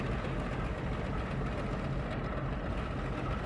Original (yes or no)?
yes